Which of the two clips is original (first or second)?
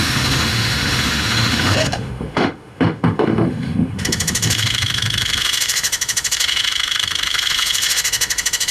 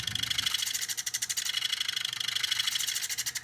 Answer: second